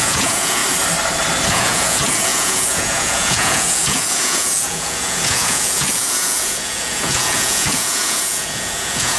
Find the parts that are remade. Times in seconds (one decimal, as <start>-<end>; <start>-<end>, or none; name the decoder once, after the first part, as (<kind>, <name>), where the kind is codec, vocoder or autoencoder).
0.0-0.6 (vocoder, Vocos); 1.5-9.2